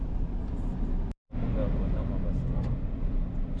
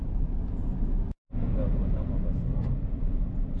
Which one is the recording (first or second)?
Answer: first